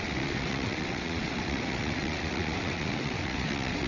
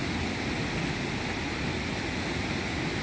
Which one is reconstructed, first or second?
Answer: first